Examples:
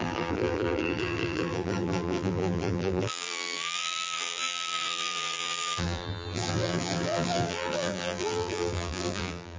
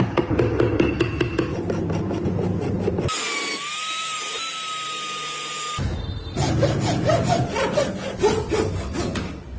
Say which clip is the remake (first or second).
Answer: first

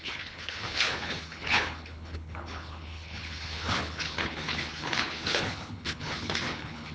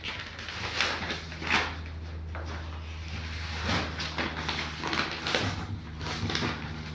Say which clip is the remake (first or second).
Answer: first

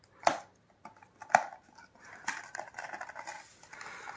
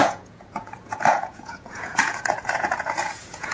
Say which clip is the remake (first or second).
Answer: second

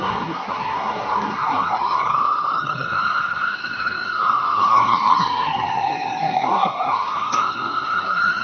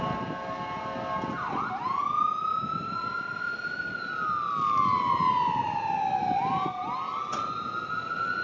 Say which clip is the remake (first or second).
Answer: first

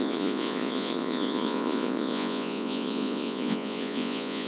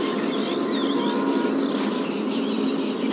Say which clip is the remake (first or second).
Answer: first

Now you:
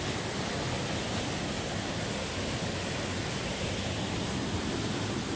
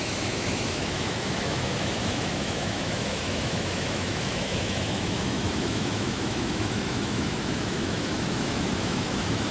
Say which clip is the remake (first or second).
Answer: second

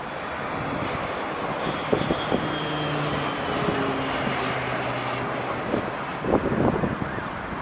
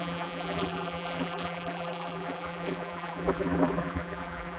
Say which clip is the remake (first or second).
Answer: second